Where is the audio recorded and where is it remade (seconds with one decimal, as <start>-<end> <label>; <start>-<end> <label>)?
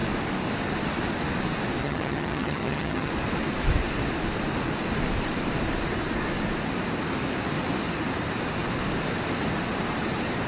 0.0-1.8 recorded; 1.8-3.1 remade; 3.1-10.5 recorded